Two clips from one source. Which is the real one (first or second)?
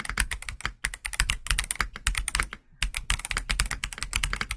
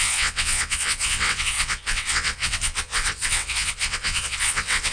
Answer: first